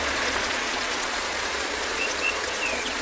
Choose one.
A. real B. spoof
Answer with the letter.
B